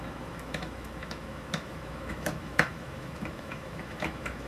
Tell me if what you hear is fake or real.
fake